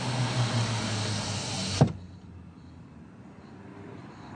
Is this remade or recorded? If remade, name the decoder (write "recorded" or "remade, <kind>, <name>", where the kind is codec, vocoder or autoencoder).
recorded